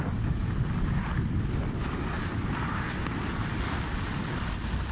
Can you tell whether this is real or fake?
real